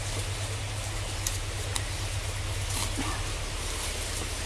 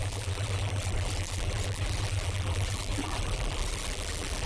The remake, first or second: second